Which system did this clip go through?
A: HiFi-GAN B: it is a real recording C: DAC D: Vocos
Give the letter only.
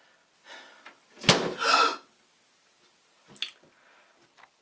B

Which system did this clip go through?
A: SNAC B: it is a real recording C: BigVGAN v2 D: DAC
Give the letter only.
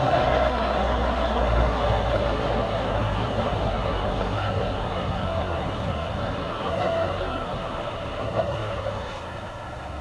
A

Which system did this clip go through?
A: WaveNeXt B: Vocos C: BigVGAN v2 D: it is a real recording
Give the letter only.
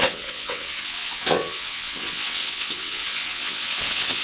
A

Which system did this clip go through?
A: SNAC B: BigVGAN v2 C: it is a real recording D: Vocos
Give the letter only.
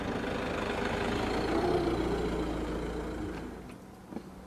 C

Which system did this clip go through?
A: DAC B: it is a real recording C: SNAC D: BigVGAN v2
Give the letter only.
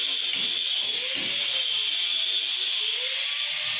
B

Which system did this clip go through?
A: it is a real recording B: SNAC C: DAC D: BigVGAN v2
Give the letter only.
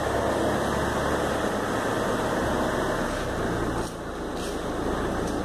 A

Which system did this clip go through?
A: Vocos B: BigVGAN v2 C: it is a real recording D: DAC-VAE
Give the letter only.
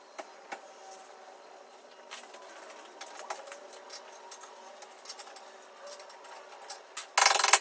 C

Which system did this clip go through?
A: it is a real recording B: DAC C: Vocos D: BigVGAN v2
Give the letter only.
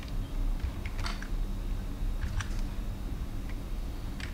A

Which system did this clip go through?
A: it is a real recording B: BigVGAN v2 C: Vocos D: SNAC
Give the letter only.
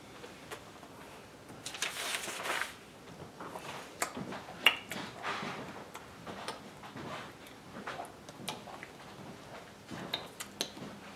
A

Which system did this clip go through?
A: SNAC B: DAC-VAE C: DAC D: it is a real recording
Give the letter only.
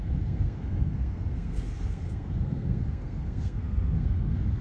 A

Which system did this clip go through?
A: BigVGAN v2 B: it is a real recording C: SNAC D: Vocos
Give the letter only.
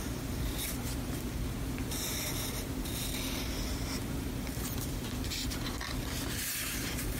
B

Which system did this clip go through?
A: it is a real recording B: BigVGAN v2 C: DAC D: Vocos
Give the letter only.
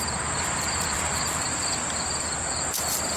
B